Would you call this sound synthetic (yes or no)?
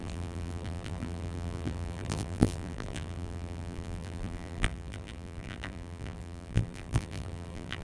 yes